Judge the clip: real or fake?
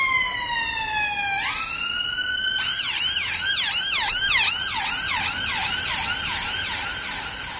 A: real